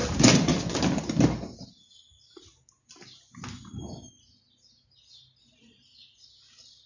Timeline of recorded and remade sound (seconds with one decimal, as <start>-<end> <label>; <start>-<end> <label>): 0.0-6.9 recorded